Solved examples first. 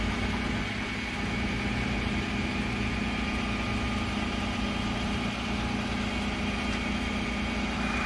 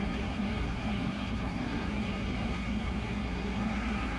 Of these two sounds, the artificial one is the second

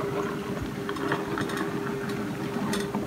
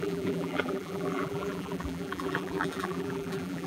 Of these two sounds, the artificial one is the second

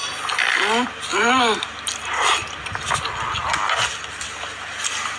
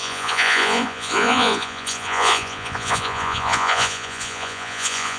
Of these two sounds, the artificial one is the second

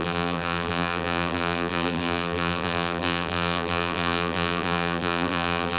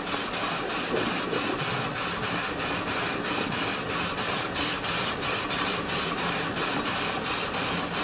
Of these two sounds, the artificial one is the first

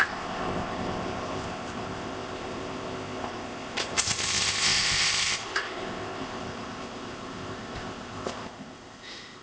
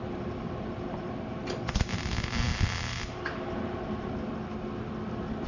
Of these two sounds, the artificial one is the first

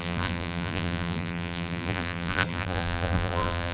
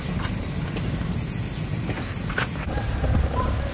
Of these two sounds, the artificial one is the first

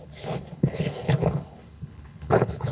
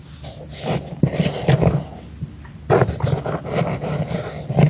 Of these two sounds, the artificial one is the first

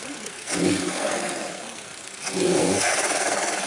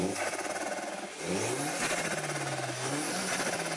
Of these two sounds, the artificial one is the first